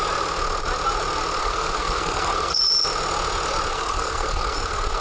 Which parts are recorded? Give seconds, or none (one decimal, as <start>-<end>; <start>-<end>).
0.0-1.4; 2.6-3.7